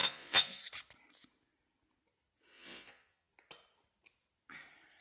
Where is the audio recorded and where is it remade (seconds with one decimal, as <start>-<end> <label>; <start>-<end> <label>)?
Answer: 0.0-0.6 remade; 0.6-2.5 recorded; 2.5-3.3 remade; 3.3-5.0 recorded